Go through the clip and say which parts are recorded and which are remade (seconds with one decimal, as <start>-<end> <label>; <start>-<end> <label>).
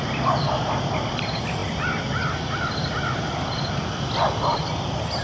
0.0-5.2 recorded